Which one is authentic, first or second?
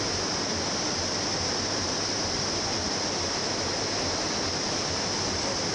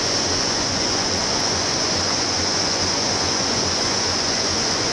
first